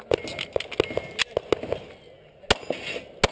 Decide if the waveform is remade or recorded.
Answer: recorded